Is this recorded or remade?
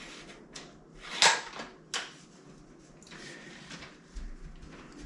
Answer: recorded